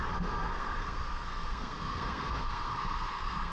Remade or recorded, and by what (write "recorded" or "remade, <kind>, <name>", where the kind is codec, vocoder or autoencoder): remade, codec, SNAC